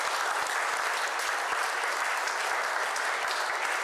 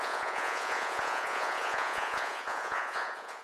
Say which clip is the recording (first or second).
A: first